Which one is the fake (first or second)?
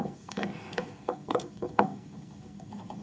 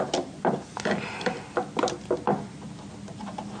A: first